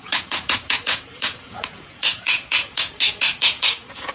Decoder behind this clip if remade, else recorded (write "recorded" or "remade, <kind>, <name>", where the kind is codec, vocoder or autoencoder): remade, vocoder, Vocos